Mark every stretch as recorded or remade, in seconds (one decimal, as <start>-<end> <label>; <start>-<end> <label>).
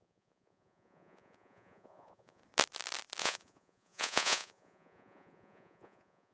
0.0-2.4 remade; 2.4-3.2 recorded; 3.2-6.3 remade